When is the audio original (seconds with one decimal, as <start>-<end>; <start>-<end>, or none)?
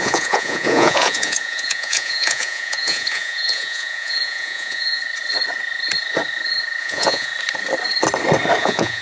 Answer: 5.0-6.8; 7.3-8.6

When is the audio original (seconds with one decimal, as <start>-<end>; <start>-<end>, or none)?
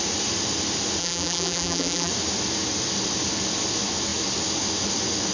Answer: 0.0-1.0; 2.1-5.3